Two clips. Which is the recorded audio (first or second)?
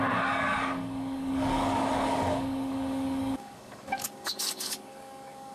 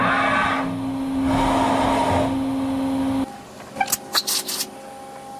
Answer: second